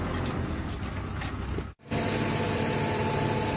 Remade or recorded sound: recorded